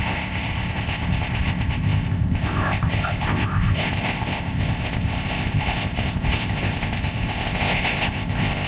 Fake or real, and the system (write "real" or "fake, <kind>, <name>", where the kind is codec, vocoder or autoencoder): fake, codec, ZipCodec